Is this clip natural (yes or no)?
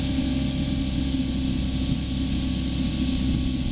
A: yes